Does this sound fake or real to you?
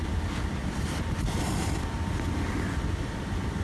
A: real